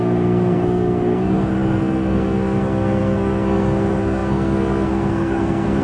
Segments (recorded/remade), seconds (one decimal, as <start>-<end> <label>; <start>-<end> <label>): 0.0-5.8 remade